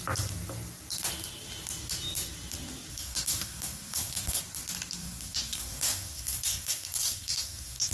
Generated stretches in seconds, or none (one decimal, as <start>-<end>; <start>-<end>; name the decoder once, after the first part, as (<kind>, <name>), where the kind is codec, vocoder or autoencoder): 2.9-4.4 (codec, SNAC); 5.0-7.9